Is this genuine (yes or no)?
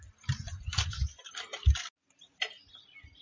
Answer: yes